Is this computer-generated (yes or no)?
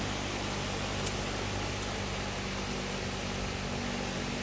no